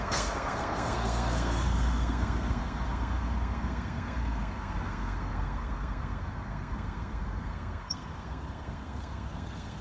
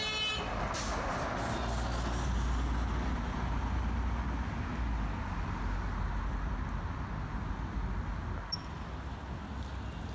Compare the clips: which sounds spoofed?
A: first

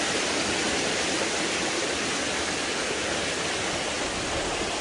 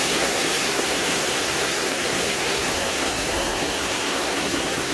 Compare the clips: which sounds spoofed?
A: second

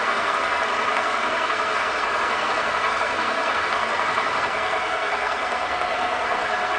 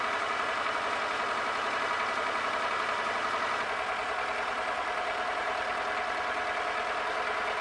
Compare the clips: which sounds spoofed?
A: first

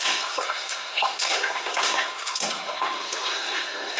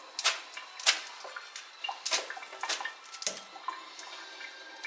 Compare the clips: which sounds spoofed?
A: first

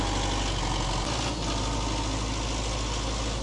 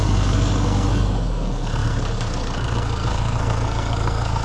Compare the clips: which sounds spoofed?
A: second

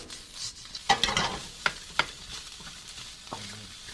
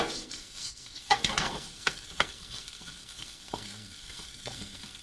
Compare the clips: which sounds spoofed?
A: second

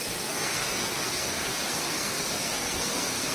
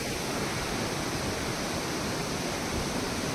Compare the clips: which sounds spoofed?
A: first